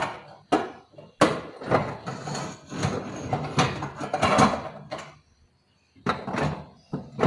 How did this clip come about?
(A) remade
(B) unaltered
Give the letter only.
B